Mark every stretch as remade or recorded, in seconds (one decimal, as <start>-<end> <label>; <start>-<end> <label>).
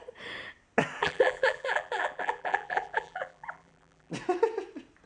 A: 0.0-1.0 recorded; 1.0-4.1 remade; 4.1-5.1 recorded